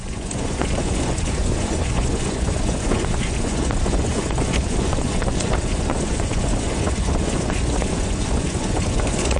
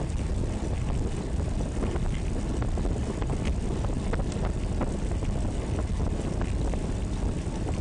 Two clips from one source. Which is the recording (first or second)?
second